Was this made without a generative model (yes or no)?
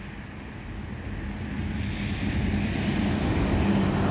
yes